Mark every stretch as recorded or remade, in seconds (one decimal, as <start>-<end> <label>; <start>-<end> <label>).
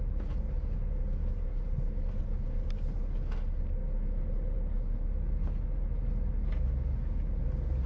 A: 0.0-7.9 recorded